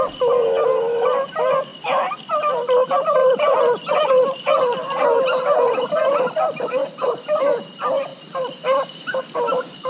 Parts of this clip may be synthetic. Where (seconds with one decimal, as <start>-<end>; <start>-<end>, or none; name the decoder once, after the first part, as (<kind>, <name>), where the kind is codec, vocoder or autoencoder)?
1.7-2.3 (vocoder, BigVGAN v2); 3.2-7.4; 8.1-9.2